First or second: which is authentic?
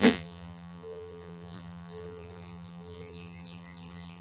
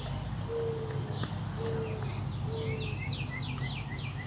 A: second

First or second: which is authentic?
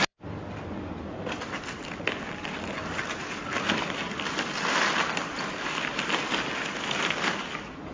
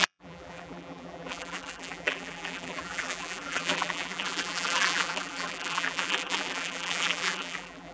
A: first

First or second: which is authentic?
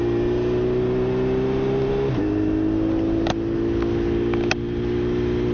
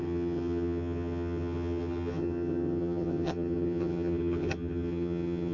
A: first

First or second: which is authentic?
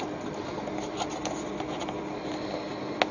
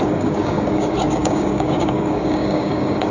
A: first